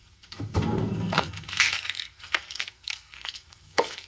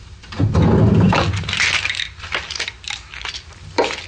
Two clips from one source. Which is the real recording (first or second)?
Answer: second